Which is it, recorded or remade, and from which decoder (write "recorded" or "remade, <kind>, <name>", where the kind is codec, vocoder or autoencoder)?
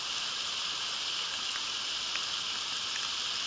recorded